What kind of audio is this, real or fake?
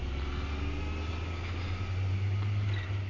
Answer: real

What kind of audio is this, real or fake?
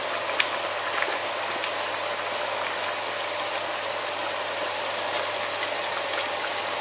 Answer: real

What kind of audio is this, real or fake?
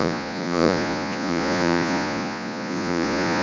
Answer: fake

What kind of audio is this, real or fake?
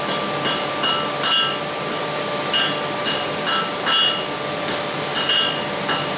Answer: real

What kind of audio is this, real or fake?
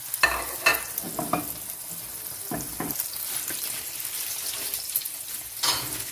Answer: real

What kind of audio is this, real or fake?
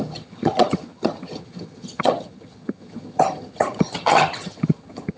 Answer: fake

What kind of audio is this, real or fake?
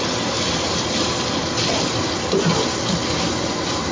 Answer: real